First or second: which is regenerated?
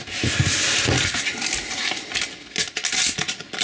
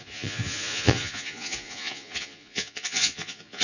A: second